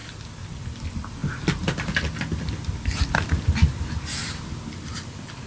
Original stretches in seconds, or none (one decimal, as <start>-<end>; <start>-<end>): 0.0-5.5

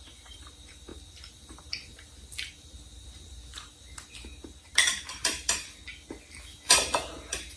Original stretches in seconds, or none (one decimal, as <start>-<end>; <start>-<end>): 5.8-6.5